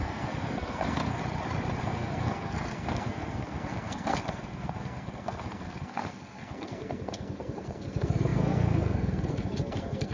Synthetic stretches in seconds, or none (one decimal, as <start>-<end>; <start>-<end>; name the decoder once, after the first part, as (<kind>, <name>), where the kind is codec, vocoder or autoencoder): 0.0-1.2 (codec, SNAC); 1.8-10.1